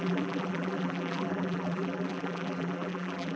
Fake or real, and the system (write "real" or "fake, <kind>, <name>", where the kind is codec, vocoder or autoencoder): fake, vocoder, BigVGAN v2